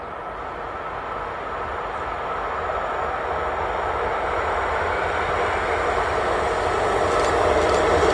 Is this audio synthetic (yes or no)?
no